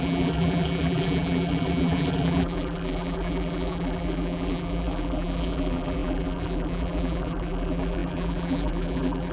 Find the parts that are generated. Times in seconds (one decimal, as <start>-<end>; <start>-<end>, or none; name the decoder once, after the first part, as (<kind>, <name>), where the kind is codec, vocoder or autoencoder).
0.0-9.3 (vocoder, BigVGAN v2)